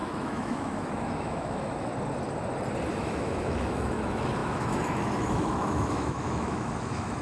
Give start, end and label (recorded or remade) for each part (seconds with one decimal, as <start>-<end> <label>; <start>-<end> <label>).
0.0-1.9 remade; 1.9-2.9 recorded; 2.9-7.2 remade